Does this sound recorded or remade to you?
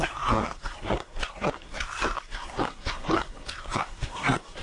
remade